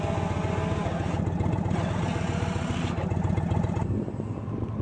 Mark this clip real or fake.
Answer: real